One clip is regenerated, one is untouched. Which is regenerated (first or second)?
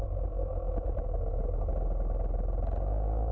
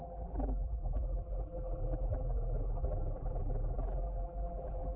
second